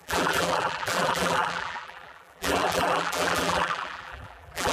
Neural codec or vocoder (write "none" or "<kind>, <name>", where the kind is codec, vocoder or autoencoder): vocoder, BigVGAN v2